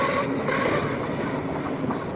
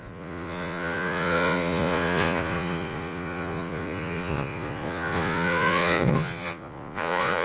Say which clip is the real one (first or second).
first